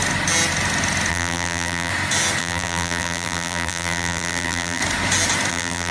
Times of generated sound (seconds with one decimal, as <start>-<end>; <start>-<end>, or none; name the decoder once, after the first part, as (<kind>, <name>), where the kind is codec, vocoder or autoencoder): 1.1-1.9 (vocoder, BigVGAN v2); 2.4-4.8; 5.5-5.9